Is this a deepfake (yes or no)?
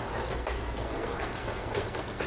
yes